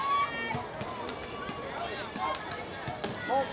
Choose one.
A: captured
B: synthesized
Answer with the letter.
A